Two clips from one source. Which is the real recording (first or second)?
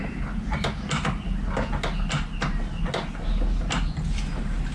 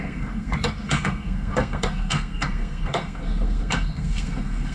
first